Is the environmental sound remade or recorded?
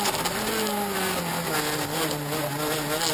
recorded